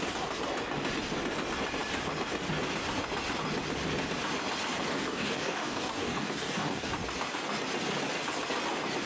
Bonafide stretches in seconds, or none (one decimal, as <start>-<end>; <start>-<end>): 0.0-4.9; 6.9-9.1